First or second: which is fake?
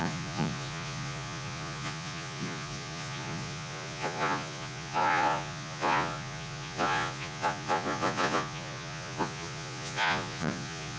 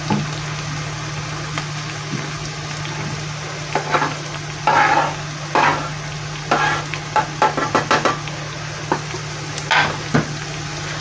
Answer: first